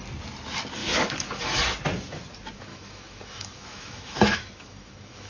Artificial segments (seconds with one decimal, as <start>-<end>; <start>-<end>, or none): 0.8-1.6; 2.7-5.3